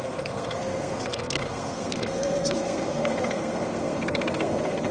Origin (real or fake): fake